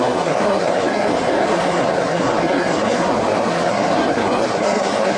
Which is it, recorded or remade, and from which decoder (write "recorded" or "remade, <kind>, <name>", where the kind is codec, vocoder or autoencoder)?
remade, codec, SNAC